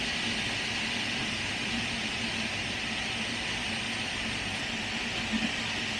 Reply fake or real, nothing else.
real